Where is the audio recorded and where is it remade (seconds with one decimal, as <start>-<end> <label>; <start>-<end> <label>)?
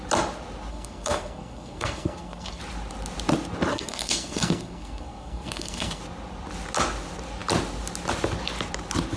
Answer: 0.0-0.7 recorded; 0.7-2.6 remade; 2.6-3.7 recorded; 3.7-6.0 remade; 6.0-9.2 recorded